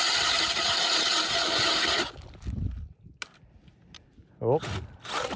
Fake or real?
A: real